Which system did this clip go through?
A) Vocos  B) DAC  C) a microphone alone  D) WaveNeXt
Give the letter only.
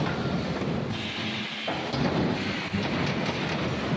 C